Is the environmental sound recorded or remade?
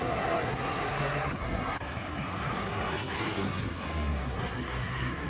remade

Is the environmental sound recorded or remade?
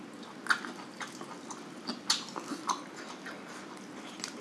recorded